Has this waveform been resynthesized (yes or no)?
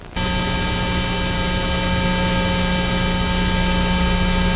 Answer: no